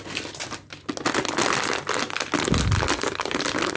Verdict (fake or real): real